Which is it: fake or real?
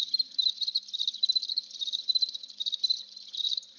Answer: real